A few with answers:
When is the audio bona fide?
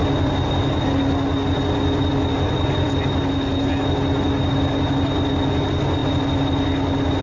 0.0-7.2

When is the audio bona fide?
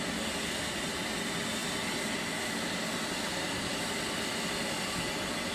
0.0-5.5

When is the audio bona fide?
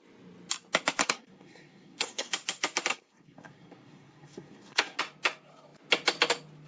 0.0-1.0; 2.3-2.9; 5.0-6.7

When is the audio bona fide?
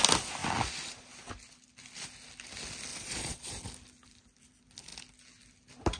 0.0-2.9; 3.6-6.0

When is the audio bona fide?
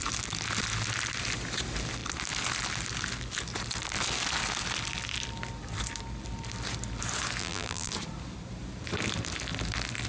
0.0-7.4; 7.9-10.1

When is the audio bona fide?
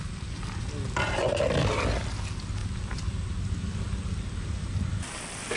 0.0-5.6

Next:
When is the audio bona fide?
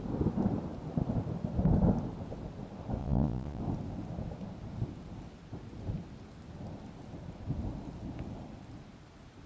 0.0-3.0; 3.6-9.5